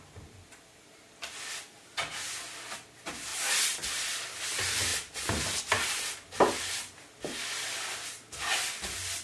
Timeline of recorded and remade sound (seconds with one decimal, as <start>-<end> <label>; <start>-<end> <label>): 0.0-9.2 recorded